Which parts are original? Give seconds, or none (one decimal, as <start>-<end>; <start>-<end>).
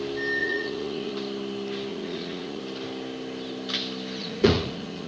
0.0-0.4; 1.1-1.9; 2.6-4.2